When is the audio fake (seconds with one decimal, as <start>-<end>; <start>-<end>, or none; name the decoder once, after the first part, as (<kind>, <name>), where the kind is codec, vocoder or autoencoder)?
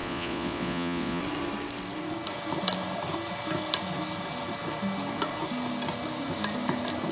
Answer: 0.0-1.2 (vocoder, Vocos)